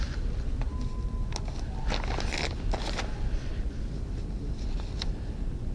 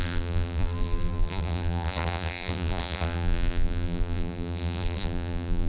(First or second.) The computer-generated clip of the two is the second